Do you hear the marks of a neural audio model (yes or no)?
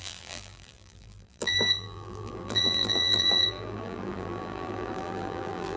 yes